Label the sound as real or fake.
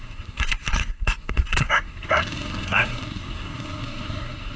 fake